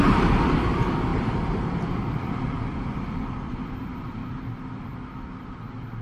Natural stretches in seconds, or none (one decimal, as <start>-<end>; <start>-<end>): none